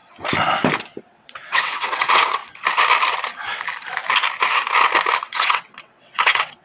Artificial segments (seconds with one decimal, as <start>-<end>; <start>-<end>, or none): 1.0-2.4; 5.3-6.6